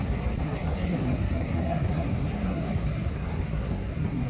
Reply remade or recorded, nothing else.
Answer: remade